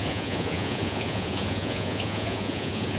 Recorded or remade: remade